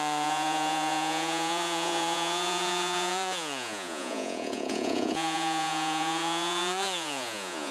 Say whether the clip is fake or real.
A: fake